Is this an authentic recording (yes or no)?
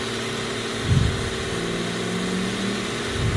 yes